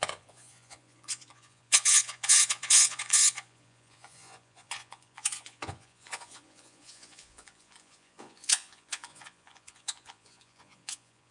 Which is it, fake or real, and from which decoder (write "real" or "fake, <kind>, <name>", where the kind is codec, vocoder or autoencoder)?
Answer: fake, vocoder, Vocos